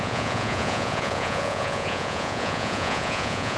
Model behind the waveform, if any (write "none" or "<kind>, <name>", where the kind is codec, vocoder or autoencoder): vocoder, Vocos